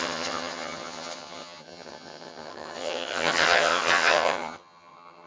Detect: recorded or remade remade